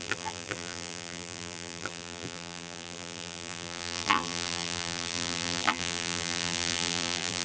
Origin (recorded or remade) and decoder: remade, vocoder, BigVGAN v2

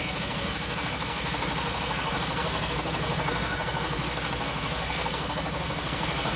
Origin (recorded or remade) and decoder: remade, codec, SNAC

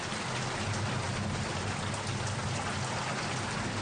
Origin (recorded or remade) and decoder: recorded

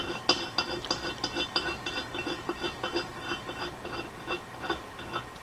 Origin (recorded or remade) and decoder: recorded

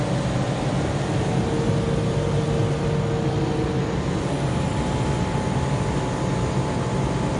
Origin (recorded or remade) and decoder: recorded